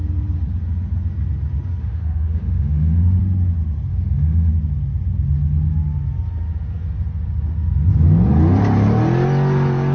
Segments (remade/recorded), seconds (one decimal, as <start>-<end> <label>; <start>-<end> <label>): 0.0-1.8 recorded; 1.8-3.2 remade; 3.2-3.9 recorded; 3.9-4.5 remade; 4.5-9.9 recorded